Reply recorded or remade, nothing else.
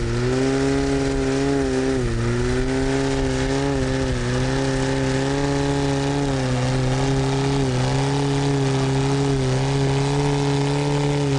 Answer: recorded